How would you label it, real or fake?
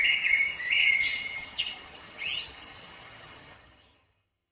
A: fake